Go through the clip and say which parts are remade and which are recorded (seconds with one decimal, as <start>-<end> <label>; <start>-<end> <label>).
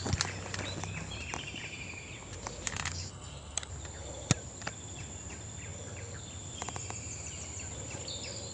0.0-3.1 recorded; 3.1-3.7 remade; 3.7-8.5 recorded